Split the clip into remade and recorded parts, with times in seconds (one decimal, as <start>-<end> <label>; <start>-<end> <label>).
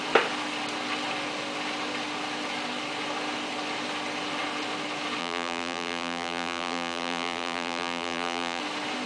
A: 0.0-5.2 recorded; 5.2-8.6 remade; 8.6-9.1 recorded